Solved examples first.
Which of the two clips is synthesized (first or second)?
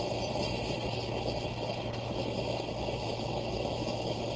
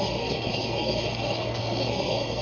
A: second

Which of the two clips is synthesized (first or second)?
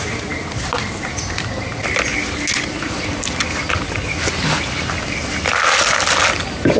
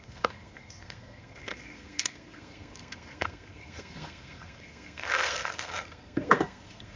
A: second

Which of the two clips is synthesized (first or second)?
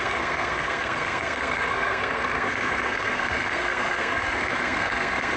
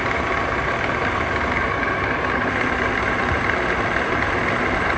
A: first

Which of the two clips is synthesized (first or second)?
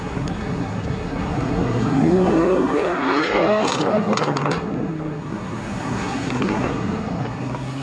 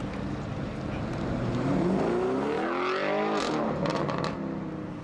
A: first